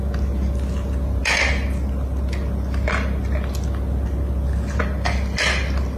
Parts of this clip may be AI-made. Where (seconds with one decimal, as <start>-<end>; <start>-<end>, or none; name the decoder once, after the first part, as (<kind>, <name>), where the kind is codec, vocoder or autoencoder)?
none